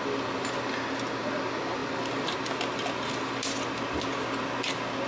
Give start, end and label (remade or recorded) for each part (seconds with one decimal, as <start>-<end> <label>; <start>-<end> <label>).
0.0-5.1 recorded